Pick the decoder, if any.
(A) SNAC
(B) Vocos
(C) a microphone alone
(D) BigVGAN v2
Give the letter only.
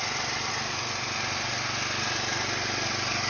C